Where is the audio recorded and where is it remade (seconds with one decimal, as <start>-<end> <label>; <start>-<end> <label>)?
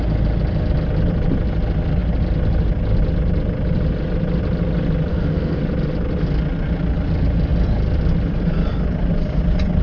0.0-5.1 recorded; 5.1-5.6 remade; 5.6-9.8 recorded